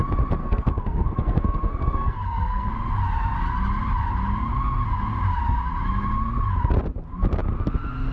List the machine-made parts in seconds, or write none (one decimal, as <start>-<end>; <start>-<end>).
0.4-2.7